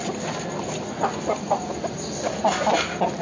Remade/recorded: recorded